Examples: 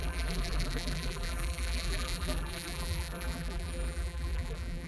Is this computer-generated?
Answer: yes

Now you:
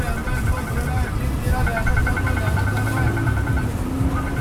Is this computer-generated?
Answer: no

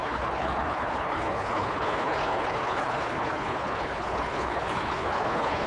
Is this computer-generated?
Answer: yes